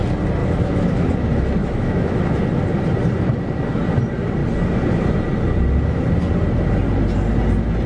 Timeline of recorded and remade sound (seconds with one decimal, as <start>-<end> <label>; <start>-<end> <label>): 0.0-0.4 recorded; 0.4-1.1 remade; 1.1-1.6 recorded; 1.6-2.4 remade; 2.4-7.9 recorded